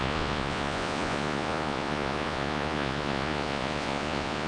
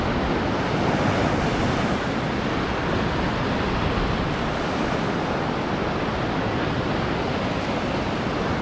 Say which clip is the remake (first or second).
first